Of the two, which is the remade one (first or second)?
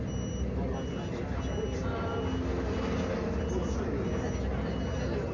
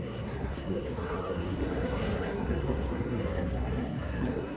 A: second